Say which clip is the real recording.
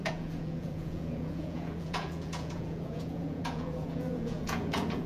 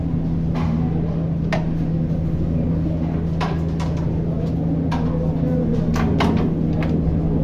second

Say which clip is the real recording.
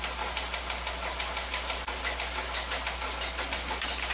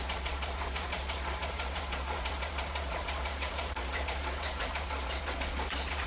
first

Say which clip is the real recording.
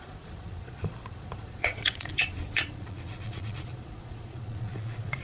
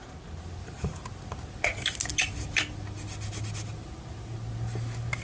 second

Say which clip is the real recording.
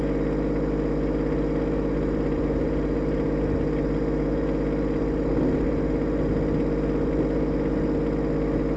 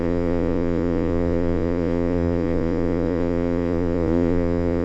first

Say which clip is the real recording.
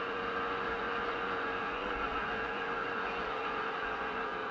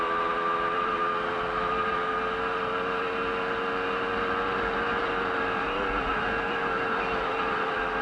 second